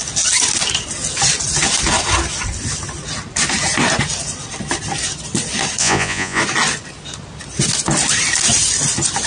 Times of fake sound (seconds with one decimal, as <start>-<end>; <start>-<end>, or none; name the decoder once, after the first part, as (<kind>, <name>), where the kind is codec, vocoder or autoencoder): 5.8-6.4 (vocoder, Vocos)